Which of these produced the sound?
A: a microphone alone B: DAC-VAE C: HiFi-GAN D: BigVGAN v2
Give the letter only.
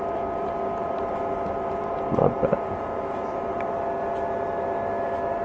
A